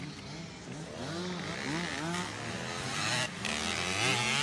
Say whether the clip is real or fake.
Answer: real